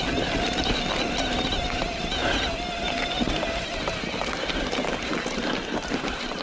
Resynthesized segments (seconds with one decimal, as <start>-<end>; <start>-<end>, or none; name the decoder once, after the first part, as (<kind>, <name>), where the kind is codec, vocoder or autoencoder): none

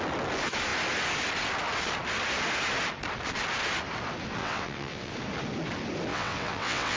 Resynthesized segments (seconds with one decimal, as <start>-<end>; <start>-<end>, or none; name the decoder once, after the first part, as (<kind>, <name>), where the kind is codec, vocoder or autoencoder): 4.4-5.1 (vocoder, WaveNeXt); 6.1-7.0

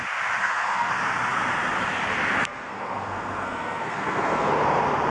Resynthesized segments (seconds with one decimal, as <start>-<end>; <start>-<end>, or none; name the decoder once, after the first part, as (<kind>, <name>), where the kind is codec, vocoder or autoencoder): 0.4-0.9 (codec, SNAC); 2.4-4.5